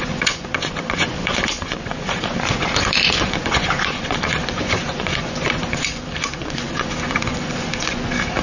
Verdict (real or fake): fake